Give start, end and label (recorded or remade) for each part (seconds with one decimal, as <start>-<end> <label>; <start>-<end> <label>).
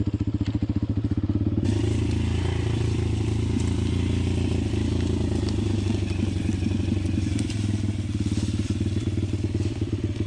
0.0-10.3 recorded